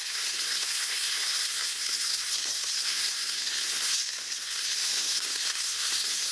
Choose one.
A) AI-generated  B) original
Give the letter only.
A